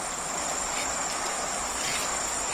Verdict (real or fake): real